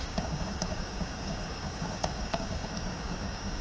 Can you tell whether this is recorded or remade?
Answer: remade